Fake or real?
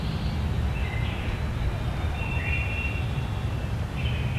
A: real